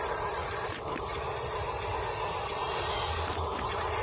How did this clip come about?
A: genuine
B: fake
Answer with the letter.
A